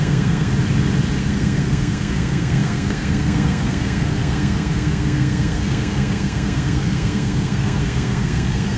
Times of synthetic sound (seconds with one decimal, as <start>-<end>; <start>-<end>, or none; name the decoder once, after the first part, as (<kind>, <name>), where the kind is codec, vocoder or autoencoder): 0.0-0.5 (codec, SNAC); 1.2-8.8